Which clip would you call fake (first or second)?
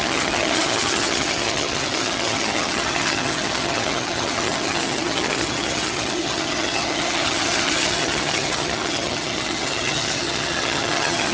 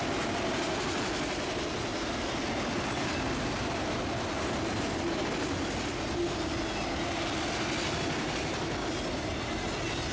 first